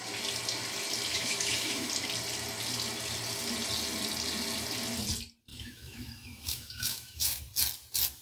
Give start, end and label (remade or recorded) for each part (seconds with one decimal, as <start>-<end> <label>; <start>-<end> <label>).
0.0-1.1 recorded; 1.1-1.9 remade; 1.9-5.5 recorded; 5.5-7.4 remade; 7.4-8.2 recorded